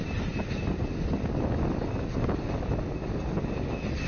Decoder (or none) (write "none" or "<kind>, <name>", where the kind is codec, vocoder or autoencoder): none